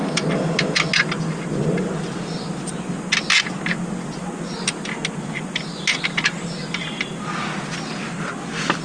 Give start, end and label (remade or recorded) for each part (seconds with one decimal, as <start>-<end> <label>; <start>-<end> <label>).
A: 0.0-8.8 recorded